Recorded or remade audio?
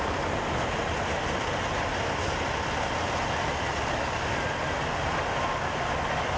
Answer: recorded